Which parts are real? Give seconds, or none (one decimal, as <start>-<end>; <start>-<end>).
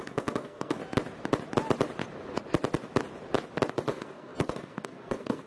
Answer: 0.8-3.7